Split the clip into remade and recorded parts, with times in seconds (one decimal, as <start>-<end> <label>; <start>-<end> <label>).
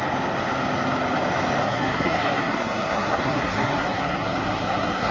0.0-1.6 recorded; 1.6-5.1 remade